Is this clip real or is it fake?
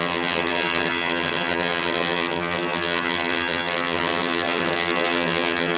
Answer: fake